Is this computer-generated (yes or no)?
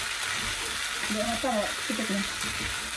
no